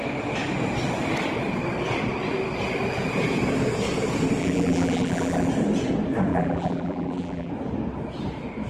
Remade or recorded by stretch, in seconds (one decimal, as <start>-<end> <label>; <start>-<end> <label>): 0.0-4.4 recorded; 4.4-5.5 remade; 5.5-6.3 recorded; 6.3-7.5 remade; 7.5-8.7 recorded